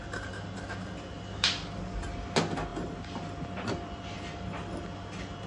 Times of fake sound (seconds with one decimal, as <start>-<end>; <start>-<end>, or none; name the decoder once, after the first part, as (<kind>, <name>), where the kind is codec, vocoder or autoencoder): none